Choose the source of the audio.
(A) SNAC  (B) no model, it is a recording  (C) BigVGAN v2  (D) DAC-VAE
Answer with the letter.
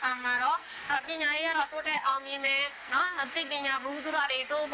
A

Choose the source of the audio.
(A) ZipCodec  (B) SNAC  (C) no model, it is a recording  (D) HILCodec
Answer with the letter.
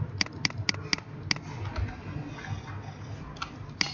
C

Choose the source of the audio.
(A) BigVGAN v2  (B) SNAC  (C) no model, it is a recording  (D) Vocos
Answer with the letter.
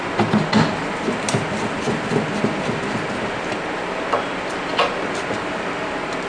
C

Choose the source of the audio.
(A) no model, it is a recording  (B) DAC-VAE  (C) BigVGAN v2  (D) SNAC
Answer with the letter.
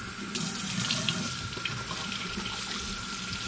A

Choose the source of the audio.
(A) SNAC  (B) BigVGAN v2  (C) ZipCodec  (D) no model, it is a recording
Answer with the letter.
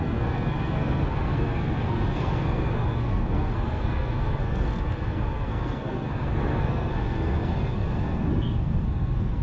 A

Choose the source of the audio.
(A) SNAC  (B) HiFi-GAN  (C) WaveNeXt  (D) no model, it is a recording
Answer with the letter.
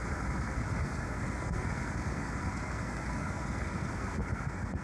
A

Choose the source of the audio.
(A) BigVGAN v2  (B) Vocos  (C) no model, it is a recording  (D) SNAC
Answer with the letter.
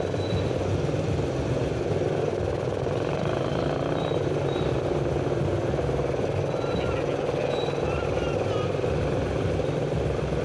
C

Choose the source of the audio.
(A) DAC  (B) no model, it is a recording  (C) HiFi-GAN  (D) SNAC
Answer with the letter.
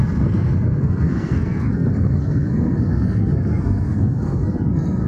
D